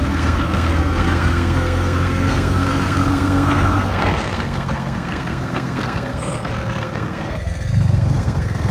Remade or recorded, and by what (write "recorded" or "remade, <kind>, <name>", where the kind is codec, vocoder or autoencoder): remade, codec, SNAC